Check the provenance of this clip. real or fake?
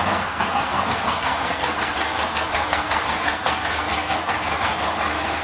fake